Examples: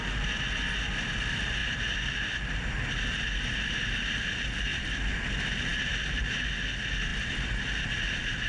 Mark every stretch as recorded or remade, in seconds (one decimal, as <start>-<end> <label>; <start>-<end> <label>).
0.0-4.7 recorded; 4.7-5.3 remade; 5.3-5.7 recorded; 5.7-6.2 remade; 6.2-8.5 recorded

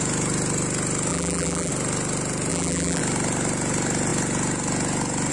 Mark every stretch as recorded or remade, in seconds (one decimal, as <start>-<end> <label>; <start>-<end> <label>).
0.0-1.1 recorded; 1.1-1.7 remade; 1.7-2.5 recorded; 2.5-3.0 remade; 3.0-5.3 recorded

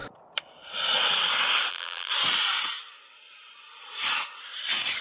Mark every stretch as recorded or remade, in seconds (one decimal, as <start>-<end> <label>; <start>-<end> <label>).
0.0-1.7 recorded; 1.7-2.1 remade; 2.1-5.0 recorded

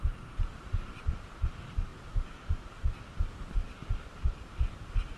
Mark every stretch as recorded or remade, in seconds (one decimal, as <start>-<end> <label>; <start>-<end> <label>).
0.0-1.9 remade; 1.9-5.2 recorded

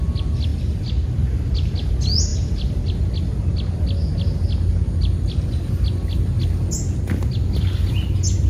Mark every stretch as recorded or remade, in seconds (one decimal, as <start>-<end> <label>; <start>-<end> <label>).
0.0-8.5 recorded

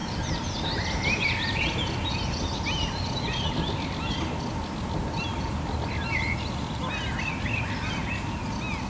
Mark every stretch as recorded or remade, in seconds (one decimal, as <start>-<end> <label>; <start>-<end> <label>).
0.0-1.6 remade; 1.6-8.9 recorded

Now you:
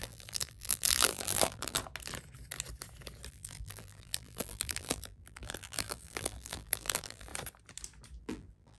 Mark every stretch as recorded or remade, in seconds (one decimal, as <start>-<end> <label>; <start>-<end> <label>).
0.0-1.8 remade; 1.8-3.3 recorded; 3.3-7.3 remade; 7.3-8.2 recorded; 8.2-8.8 remade

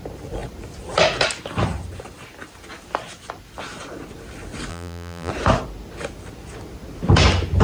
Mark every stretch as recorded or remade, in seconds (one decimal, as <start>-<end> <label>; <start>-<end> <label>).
0.0-4.7 recorded; 4.7-5.3 remade; 5.3-7.6 recorded